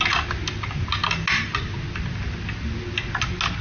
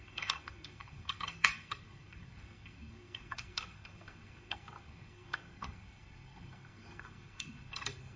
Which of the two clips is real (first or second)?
first